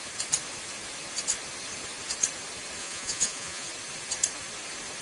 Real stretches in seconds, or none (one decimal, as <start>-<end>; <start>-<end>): 0.0-2.8; 3.7-5.0